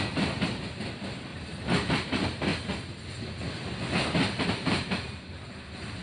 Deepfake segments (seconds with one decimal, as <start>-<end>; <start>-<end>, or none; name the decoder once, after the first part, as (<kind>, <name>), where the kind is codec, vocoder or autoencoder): 0.0-1.3 (vocoder, BigVGAN v2); 1.9-2.5; 4.5-6.0